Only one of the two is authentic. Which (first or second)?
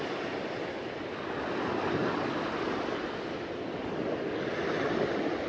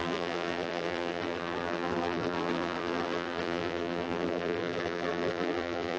first